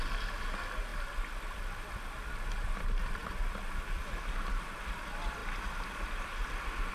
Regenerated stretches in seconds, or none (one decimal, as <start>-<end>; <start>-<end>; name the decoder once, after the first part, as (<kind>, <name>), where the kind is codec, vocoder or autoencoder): none